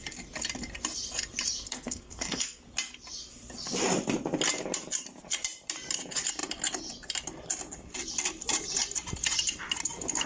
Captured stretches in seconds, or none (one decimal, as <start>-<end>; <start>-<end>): 0.0-1.7; 2.6-10.3